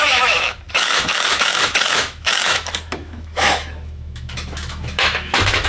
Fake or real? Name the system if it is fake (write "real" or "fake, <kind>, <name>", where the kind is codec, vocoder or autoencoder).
fake, autoencoder, DAC-VAE